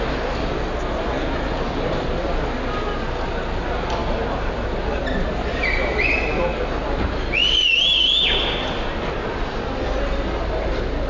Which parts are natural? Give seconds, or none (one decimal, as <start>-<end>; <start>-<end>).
0.0-11.1